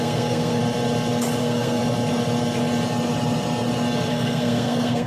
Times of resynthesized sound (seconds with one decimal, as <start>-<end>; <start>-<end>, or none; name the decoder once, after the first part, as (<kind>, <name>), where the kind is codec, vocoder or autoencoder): 0.0-0.6 (codec, SNAC); 1.4-1.8; 4.1-5.1